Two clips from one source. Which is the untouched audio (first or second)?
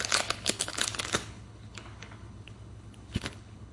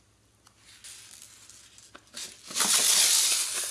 second